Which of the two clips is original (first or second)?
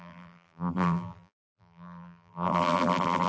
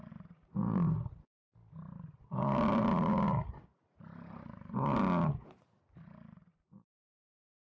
second